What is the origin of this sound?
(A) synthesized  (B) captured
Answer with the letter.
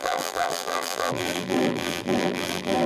A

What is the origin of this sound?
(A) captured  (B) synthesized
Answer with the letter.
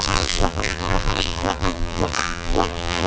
B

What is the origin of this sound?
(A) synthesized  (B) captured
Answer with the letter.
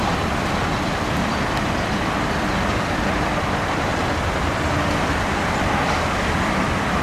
A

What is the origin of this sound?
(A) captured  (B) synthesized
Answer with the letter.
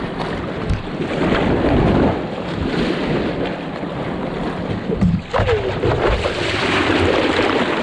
A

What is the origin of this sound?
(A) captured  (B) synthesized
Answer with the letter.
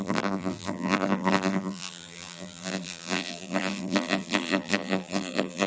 B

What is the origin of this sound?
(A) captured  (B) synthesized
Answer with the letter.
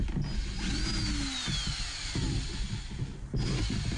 A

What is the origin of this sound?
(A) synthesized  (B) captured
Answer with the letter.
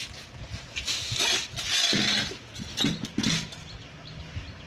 B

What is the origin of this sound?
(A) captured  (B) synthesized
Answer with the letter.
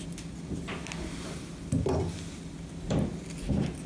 A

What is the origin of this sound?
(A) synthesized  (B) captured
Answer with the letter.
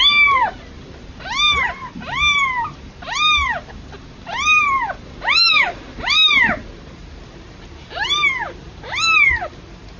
A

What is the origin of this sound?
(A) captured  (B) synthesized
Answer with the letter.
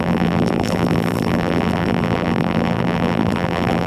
B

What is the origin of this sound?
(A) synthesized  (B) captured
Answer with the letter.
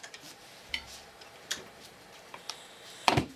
A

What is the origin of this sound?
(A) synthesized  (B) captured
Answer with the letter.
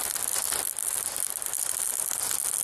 B